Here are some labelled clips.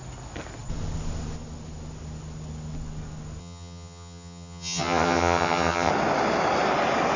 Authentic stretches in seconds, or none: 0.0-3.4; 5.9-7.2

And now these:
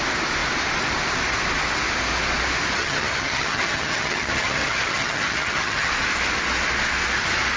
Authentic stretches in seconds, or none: 0.0-2.8; 5.9-7.6

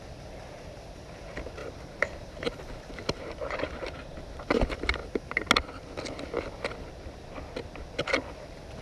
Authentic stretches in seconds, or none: 0.0-1.6; 3.2-8.8

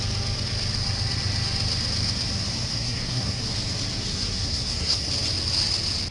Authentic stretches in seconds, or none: 0.0-2.7; 3.4-4.1; 5.1-6.1